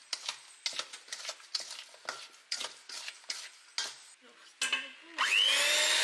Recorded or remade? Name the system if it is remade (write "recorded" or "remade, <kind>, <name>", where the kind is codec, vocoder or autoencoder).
recorded